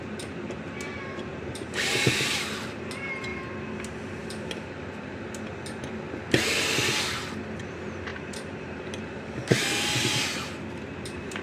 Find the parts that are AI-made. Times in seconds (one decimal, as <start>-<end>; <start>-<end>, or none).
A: 0.0-3.3; 7.6-11.4